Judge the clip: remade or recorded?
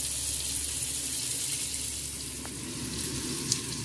recorded